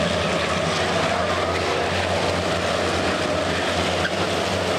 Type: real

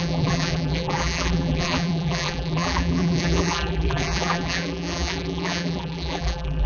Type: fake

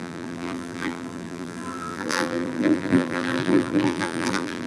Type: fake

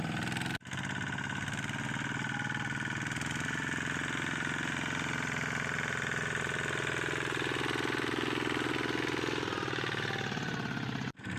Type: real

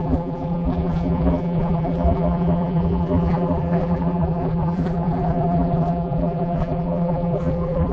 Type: fake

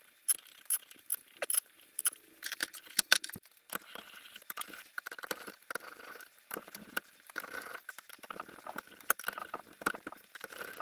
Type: fake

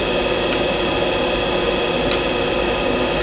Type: real